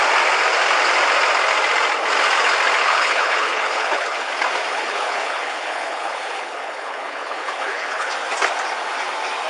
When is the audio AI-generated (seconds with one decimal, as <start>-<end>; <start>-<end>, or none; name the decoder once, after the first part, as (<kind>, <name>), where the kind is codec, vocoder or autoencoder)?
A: 2.8-4.3 (codec, HILCodec); 4.7-8.1